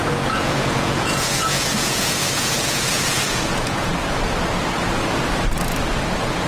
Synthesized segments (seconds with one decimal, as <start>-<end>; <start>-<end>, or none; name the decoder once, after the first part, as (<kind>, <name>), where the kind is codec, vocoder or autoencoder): 0.0-3.9 (vocoder, Vocos)